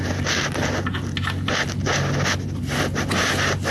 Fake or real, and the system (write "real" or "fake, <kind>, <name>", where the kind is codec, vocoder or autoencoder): real